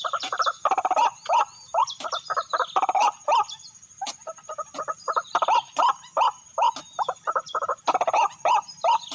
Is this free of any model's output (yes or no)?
yes